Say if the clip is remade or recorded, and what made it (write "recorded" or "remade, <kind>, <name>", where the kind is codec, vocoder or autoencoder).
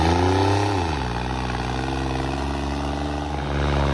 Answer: recorded